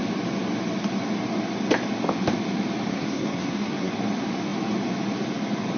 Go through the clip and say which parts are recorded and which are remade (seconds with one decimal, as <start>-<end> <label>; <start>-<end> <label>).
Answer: 0.0-2.9 recorded; 2.9-3.9 remade; 3.9-5.8 recorded